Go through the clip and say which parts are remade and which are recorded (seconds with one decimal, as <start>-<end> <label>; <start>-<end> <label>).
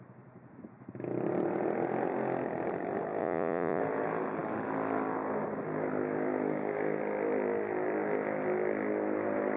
0.0-3.2 recorded; 3.2-3.8 remade; 3.8-9.6 recorded